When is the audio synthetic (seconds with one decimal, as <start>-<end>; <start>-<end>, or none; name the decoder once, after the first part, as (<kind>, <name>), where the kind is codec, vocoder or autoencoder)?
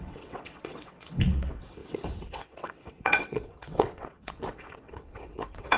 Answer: 0.0-5.8 (vocoder, WaveNeXt)